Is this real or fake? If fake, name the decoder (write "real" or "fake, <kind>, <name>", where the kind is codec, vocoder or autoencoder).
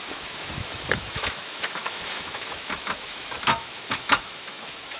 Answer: fake, autoencoder, DAC-VAE